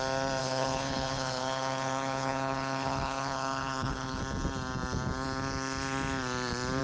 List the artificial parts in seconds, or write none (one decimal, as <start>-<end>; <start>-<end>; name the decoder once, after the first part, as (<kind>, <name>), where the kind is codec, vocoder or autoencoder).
0.4-4.2 (codec, HILCodec)